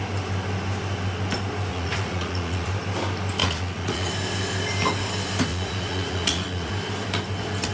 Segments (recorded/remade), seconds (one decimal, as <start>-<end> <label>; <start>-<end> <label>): 0.0-1.7 recorded; 1.7-2.7 remade; 2.7-3.4 recorded; 3.4-4.1 remade; 4.1-5.5 recorded; 5.5-6.7 remade; 6.7-7.7 recorded